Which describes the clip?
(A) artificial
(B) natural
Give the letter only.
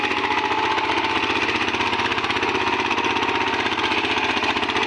B